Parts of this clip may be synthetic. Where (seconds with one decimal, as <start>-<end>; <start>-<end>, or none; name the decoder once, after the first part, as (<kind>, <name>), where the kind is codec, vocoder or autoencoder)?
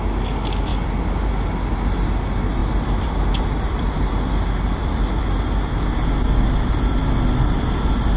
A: 0.7-1.3 (vocoder, BigVGAN v2); 2.6-6.0